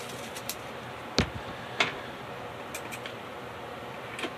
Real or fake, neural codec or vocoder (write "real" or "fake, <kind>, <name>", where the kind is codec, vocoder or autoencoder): real